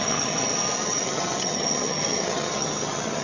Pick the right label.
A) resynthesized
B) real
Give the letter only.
A